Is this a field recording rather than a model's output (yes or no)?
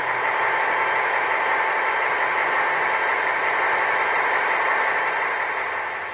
yes